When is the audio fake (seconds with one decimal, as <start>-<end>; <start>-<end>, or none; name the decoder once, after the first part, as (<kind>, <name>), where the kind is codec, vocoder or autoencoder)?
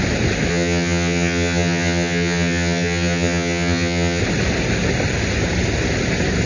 0.5-4.2 (vocoder, HiFi-GAN)